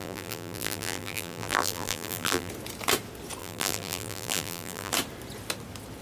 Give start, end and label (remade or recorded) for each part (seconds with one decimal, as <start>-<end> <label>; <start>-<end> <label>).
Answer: 0.0-2.5 remade; 2.5-3.4 recorded; 3.4-4.9 remade; 4.9-6.0 recorded